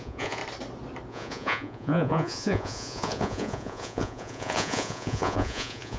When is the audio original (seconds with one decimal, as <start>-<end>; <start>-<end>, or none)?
0.4-1.1